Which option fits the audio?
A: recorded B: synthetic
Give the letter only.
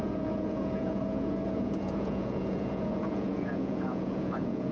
B